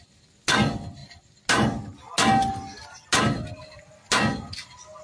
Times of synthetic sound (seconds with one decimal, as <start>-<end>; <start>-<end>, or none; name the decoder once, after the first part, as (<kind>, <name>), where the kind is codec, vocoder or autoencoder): none